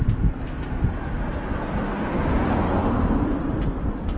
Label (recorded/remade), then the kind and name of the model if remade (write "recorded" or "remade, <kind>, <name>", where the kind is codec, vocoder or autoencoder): recorded